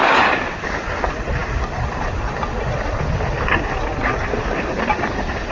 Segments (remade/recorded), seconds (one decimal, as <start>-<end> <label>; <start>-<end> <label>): 0.0-5.5 recorded